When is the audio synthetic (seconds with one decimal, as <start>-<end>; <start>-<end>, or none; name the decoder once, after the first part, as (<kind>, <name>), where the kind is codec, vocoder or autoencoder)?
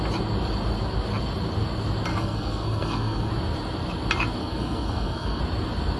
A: 2.1-3.3 (codec, SNAC); 4.4-5.4